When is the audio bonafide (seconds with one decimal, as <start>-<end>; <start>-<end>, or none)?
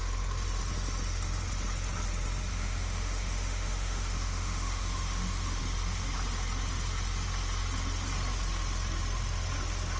0.0-2.5; 5.6-10.0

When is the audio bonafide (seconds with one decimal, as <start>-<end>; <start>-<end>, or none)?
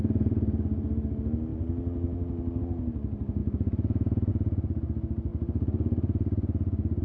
0.0-3.4; 4.3-7.0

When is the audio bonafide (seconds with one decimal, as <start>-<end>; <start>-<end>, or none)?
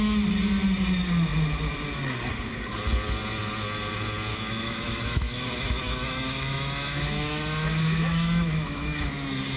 0.0-4.3; 9.1-9.6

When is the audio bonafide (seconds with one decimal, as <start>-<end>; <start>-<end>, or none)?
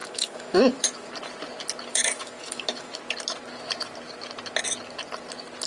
1.1-1.9; 3.0-5.7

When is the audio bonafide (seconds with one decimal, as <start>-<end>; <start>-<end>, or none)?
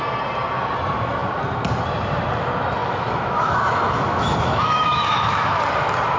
0.0-2.8; 5.6-6.2